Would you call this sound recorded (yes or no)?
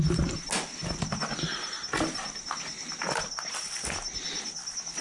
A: yes